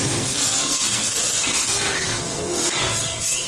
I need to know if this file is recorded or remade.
remade